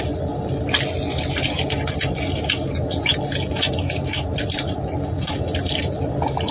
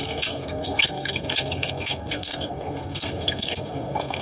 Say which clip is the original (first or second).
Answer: first